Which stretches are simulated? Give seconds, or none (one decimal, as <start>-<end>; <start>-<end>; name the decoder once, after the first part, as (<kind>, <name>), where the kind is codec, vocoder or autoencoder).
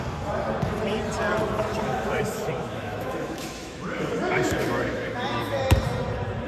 1.7-5.6 (autoencoder, DAC-VAE)